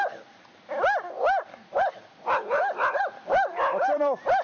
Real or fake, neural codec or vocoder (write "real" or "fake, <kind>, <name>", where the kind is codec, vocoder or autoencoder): real